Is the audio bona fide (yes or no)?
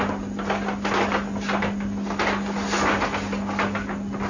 yes